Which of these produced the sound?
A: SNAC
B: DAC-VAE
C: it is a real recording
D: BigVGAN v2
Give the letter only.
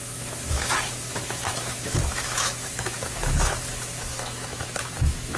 B